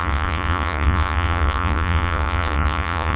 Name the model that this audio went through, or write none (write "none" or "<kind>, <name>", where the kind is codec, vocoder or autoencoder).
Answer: vocoder, Vocos